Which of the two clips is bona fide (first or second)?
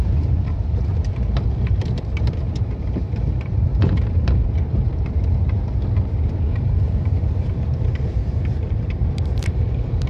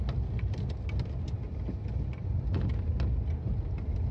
second